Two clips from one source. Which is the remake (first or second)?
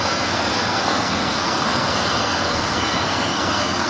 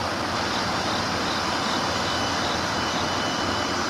first